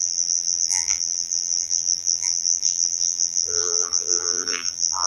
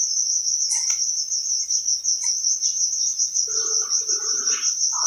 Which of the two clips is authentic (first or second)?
second